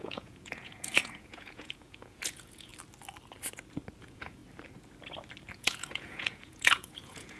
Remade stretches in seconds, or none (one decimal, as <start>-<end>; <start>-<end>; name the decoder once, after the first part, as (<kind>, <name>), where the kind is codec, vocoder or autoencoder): 0.0-2.7 (vocoder, Vocos); 4.0-4.4; 5.5-7.4